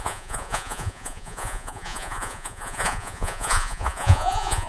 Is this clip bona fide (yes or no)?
no